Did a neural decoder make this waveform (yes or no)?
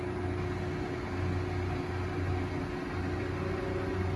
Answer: no